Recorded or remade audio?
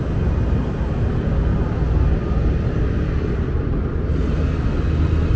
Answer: recorded